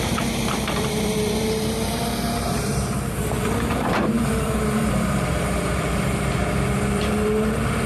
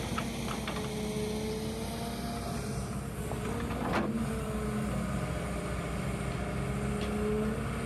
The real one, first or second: second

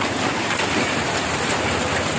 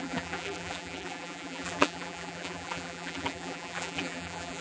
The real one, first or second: first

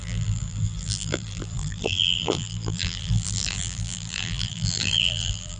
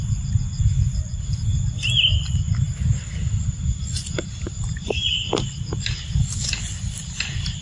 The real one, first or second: second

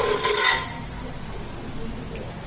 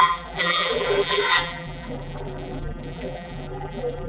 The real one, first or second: first